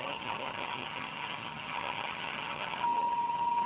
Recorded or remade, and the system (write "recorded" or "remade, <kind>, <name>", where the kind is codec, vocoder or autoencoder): remade, vocoder, HiFi-GAN